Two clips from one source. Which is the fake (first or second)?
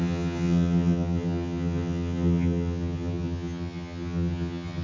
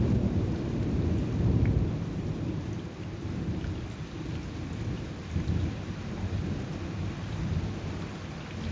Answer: first